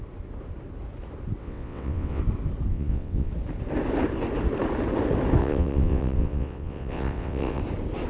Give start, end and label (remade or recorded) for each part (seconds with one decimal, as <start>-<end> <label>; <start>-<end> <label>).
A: 0.0-1.4 recorded; 1.4-2.2 remade; 2.2-2.7 recorded; 2.7-3.3 remade; 3.3-5.4 recorded; 5.4-7.6 remade; 7.6-8.1 recorded